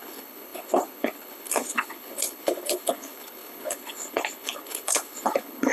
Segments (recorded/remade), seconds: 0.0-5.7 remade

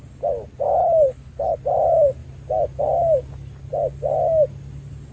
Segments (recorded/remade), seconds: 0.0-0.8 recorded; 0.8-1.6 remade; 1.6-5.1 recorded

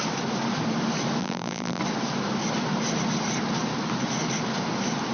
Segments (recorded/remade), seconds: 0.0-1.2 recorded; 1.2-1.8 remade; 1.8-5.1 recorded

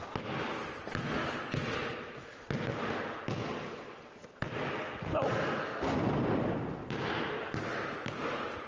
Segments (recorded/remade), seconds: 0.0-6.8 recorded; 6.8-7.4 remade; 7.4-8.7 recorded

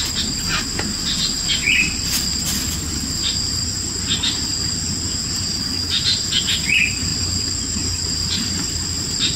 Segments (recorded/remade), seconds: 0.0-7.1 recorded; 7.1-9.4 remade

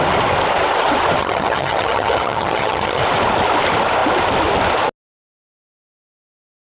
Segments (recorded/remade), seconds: 0.0-1.2 recorded; 1.2-3.0 remade; 3.0-6.6 recorded

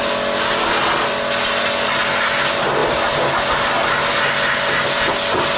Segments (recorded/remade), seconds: 0.0-5.6 recorded